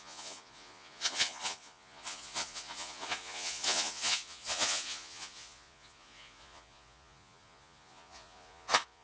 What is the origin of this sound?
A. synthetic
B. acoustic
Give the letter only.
A